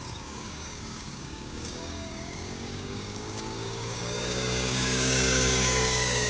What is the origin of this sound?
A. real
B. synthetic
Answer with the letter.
B